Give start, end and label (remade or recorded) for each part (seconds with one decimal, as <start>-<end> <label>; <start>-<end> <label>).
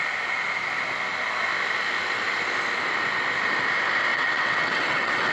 0.0-4.1 recorded; 4.1-5.3 remade